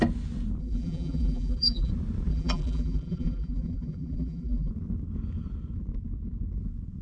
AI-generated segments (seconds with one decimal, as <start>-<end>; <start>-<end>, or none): 0.6-1.9; 2.3-4.7